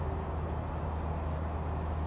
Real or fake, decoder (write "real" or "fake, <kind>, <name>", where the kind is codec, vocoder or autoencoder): real